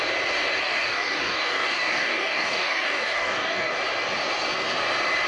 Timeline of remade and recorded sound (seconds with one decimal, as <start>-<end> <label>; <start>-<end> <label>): 0.0-0.5 recorded; 0.5-3.7 remade; 3.7-5.3 recorded